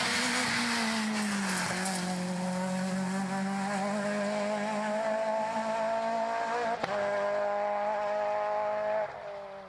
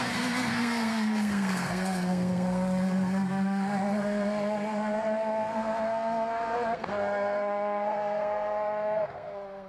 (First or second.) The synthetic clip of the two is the second